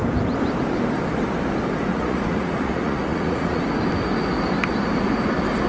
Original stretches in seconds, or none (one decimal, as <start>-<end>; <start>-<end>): 0.0-1.9; 3.6-5.7